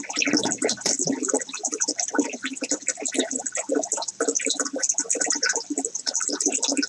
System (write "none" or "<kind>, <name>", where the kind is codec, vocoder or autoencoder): vocoder, BigVGAN v2